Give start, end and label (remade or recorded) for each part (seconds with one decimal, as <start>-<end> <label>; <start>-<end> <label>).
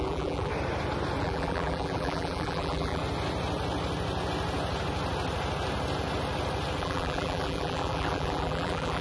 0.0-0.5 remade; 0.5-1.2 recorded; 1.2-3.0 remade; 3.0-6.8 recorded; 6.8-9.0 remade